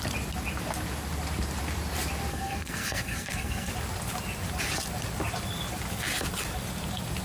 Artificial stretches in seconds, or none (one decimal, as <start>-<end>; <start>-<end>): 2.3-3.7